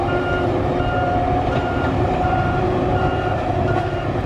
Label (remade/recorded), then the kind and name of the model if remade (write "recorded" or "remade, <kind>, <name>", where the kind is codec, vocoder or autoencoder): remade, vocoder, BigVGAN v2